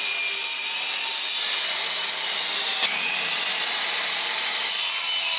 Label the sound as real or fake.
real